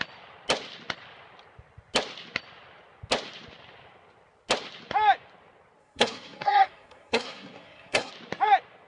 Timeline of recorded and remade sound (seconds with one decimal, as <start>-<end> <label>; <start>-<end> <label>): 0.0-5.8 recorded; 5.8-8.1 remade; 8.1-8.9 recorded

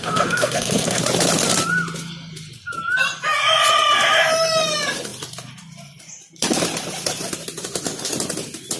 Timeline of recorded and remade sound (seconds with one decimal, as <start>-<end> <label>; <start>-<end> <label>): 0.0-1.0 remade; 1.0-8.8 recorded

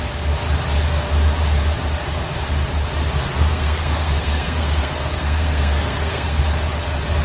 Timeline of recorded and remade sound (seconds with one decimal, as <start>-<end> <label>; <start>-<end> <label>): 0.0-3.3 recorded; 3.3-6.4 remade; 6.4-7.2 recorded